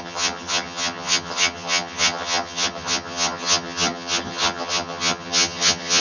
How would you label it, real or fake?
fake